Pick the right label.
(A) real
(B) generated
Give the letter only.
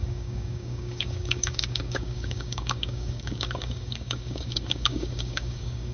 B